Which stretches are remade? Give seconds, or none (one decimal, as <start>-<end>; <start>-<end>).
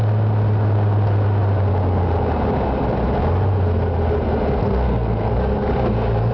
4.6-5.3